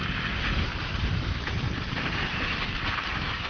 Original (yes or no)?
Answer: yes